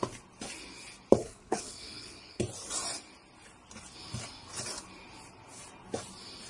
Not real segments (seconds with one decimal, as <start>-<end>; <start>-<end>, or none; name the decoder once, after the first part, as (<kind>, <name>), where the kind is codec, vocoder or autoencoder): 1.2-2.4 (codec, HILCodec)